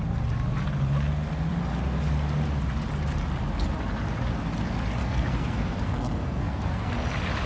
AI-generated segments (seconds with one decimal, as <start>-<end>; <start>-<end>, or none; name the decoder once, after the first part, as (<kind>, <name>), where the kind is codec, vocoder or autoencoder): 5.0-6.9 (codec, SNAC)